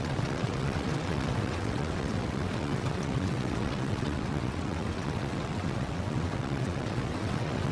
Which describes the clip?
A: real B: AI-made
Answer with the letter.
B